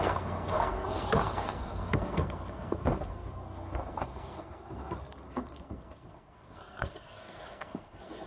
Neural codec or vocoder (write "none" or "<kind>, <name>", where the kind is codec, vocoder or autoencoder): codec, SNAC